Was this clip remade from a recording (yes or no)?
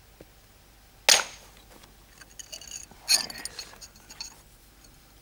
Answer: no